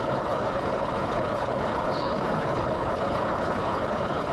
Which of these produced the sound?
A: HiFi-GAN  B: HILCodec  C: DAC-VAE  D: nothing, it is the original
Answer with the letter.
B